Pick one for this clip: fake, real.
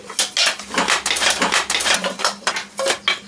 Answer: real